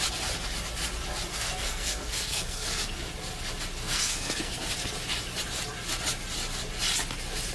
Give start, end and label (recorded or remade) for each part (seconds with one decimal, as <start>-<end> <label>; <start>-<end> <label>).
0.0-1.3 recorded; 1.3-3.1 remade; 3.1-3.8 recorded; 3.8-4.7 remade; 4.7-7.5 recorded